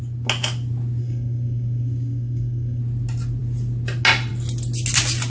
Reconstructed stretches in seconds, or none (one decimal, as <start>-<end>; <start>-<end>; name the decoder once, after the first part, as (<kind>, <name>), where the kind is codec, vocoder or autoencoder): 1.0-2.8 (codec, SNAC)